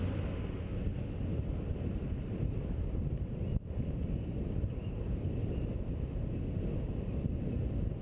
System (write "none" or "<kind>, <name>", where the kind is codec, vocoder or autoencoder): none